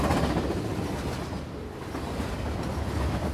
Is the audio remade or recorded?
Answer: recorded